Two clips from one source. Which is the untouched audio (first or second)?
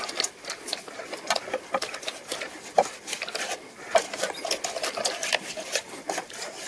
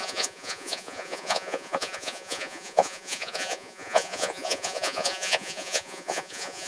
first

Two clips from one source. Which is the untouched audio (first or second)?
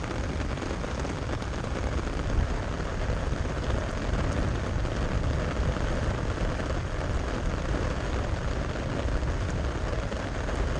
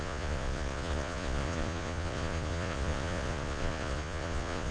first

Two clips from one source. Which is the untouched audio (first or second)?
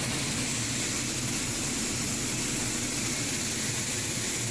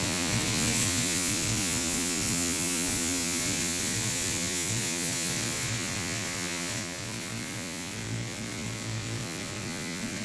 first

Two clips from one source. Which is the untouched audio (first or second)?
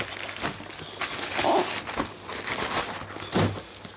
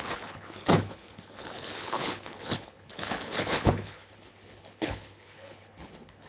first